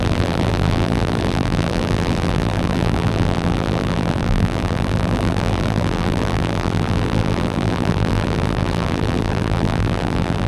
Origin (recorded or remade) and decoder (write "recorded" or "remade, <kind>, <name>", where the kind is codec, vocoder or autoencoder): remade, vocoder, BigVGAN v2